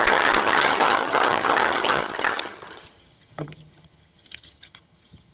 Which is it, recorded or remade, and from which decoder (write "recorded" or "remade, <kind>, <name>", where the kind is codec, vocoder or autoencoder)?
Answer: remade, vocoder, HiFi-GAN